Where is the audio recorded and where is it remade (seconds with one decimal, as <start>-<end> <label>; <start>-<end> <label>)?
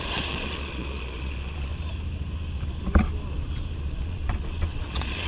0.0-1.7 remade; 1.7-3.8 recorded; 3.8-5.3 remade